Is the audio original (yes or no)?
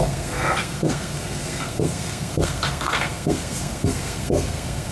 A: no